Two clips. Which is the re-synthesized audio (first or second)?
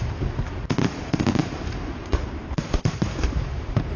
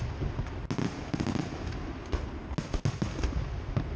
first